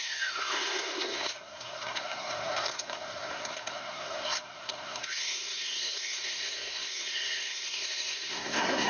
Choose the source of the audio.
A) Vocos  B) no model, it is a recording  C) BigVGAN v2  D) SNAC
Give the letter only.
D